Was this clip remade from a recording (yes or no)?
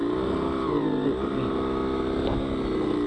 no